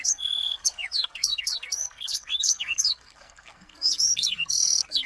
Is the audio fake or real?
fake